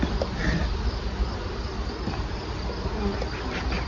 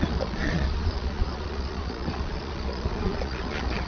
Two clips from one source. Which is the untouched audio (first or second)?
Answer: first